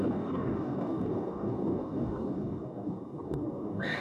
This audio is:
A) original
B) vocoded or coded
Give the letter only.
B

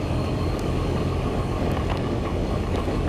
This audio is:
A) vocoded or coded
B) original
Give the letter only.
A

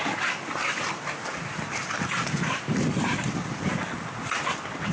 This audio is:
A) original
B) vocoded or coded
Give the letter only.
A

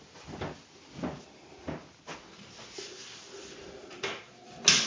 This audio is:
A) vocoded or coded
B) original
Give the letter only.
B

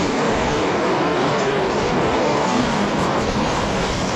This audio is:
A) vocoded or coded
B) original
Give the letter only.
A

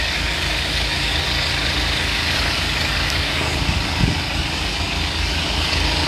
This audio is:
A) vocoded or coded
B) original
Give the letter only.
A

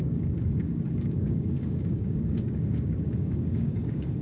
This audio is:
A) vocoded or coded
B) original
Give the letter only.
A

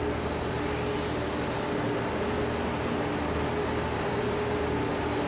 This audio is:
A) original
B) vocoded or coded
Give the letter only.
A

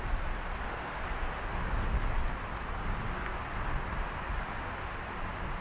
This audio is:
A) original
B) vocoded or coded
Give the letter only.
A